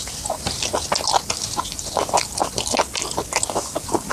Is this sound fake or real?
real